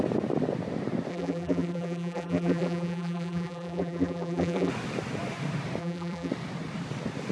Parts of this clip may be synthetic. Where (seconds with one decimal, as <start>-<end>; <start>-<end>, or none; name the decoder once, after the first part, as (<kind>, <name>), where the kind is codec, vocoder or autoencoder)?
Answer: 1.1-4.7 (vocoder, BigVGAN v2); 5.8-6.3

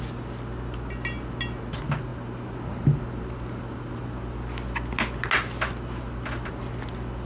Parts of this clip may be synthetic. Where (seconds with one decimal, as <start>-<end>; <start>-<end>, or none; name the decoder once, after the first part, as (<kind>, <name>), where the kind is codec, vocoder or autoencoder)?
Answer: none

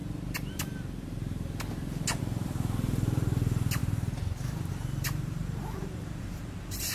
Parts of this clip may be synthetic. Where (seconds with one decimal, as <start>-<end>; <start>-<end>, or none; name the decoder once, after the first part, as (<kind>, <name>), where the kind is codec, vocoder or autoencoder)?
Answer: 2.2-3.8 (vocoder, BigVGAN v2); 4.7-6.9

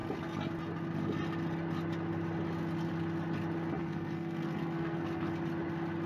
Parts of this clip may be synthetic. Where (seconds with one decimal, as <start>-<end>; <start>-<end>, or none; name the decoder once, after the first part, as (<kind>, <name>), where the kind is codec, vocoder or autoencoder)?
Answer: 3.8-5.3 (codec, SNAC)

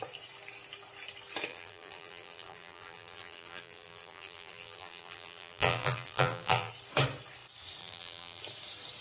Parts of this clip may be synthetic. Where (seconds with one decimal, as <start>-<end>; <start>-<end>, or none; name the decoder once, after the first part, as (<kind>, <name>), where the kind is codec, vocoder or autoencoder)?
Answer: 1.5-6.7 (vocoder, BigVGAN v2); 7.8-8.4

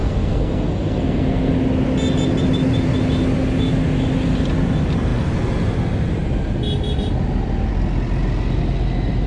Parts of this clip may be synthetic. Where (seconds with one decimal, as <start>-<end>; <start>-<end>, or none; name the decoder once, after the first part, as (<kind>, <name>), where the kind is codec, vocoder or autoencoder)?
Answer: 0.0-1.5 (codec, SNAC)

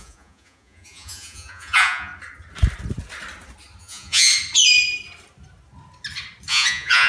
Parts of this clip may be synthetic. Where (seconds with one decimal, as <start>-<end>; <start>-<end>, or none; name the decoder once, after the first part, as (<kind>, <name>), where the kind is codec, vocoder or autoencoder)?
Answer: 0.0-2.1 (vocoder, Vocos); 3.8-4.3; 6.5-7.1